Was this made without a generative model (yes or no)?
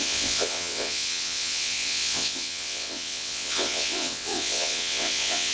no